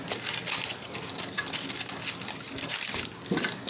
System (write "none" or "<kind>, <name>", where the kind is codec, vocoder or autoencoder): none